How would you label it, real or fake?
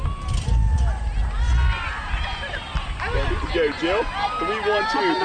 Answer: real